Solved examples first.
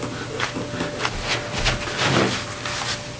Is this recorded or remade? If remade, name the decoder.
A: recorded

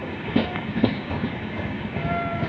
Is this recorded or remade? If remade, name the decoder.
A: remade, codec, DAC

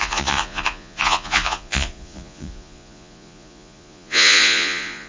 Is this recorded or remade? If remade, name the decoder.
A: remade, vocoder, Vocos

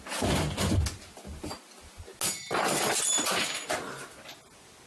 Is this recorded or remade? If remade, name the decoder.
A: recorded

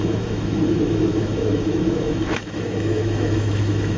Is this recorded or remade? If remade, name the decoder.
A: remade, autoencoder, DAC-VAE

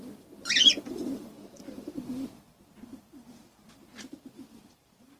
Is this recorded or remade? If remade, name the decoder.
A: remade, vocoder, BigVGAN v2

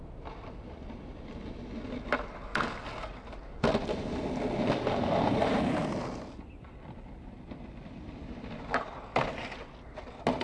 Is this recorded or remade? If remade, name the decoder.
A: recorded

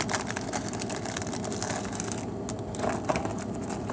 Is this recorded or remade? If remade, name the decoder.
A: recorded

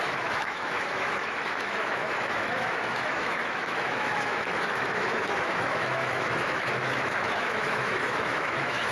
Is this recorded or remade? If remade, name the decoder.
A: remade, autoencoder, DAC-VAE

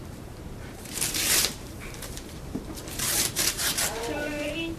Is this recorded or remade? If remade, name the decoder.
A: remade, vocoder, BigVGAN v2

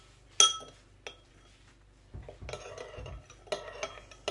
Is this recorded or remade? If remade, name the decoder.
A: recorded